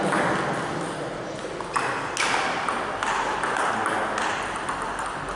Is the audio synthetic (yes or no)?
no